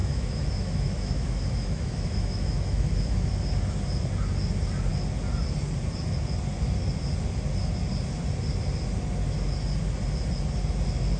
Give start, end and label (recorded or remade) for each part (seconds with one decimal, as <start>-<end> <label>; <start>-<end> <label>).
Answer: 0.0-3.3 remade; 3.3-11.2 recorded

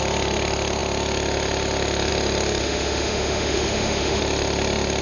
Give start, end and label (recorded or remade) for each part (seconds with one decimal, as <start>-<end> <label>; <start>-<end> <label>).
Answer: 0.0-2.6 recorded; 2.6-4.2 remade; 4.2-5.0 recorded

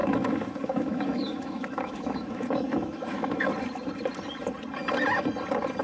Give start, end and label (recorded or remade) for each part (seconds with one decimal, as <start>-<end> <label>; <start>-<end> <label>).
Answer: 0.0-3.5 remade; 3.5-5.8 recorded

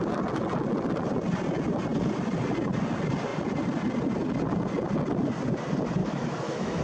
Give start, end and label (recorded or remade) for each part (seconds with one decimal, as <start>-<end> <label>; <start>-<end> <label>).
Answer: 0.0-6.0 recorded; 6.0-6.8 remade